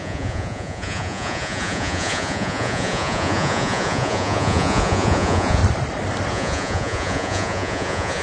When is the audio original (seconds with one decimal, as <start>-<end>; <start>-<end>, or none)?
5.6-6.3